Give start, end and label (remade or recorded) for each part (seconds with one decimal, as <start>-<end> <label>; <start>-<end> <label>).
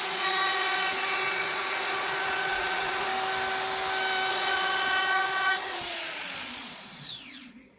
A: 0.0-3.1 remade; 3.1-4.3 recorded; 4.3-7.8 remade